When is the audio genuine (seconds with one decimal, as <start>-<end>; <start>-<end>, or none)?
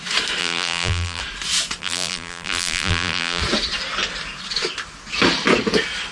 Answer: 0.0-0.4; 1.2-1.8; 3.4-6.1